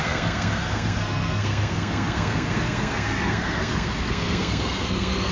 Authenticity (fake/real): fake